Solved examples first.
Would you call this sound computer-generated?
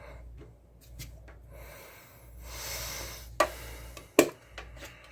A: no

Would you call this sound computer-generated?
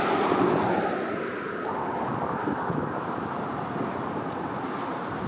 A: no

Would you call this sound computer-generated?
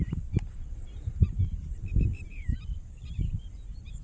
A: yes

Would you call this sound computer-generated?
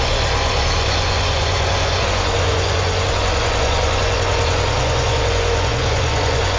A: yes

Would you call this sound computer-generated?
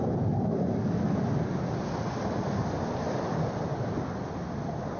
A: no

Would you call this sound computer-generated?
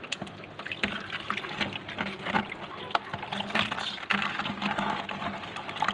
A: no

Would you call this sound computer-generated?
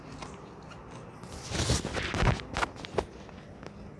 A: no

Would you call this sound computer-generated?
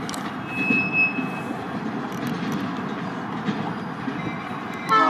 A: no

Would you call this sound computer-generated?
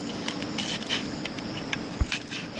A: no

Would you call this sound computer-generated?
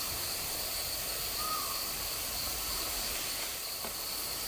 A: yes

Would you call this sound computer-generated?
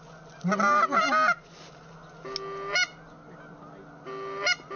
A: no